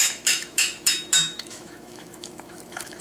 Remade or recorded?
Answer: remade